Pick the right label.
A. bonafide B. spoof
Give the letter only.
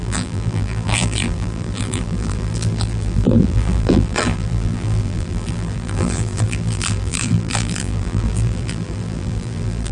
B